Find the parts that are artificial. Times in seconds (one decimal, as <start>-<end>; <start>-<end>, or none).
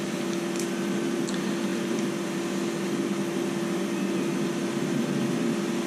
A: none